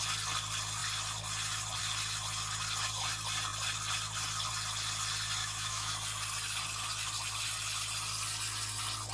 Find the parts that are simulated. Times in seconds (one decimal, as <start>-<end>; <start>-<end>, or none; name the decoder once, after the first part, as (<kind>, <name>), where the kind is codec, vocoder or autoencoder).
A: 5.4-5.9 (autoencoder, DAC-VAE)